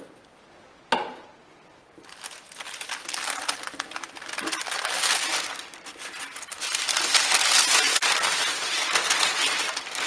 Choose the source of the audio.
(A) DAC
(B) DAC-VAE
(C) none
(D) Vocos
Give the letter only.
C